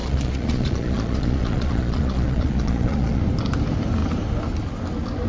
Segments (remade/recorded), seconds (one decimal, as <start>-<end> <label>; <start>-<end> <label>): 0.0-3.2 remade; 3.2-5.3 recorded